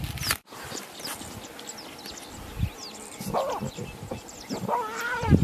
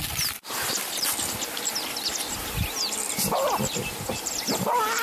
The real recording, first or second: first